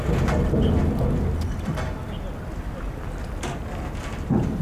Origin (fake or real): real